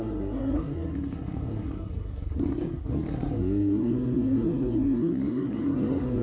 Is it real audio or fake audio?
fake